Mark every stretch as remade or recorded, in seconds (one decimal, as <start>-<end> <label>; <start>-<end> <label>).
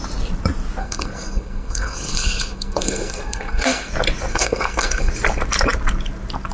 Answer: 0.0-0.8 recorded; 0.8-3.9 remade; 3.9-4.3 recorded; 4.3-5.1 remade; 5.1-6.5 recorded